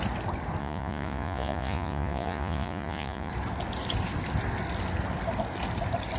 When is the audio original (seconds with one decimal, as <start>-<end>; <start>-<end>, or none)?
0.0-0.6; 3.3-6.2